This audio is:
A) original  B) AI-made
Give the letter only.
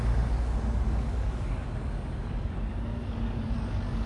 B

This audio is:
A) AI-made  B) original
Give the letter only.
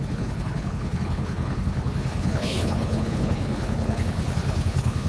A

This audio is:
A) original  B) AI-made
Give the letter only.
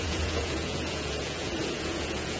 B